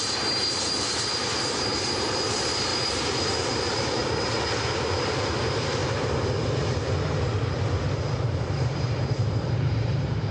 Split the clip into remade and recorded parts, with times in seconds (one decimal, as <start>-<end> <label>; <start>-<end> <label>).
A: 0.0-2.7 remade; 2.7-3.5 recorded; 3.5-4.0 remade; 4.0-4.9 recorded; 4.9-5.8 remade; 5.8-8.4 recorded; 8.4-10.3 remade